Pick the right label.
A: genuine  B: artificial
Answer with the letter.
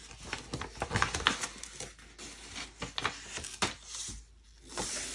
A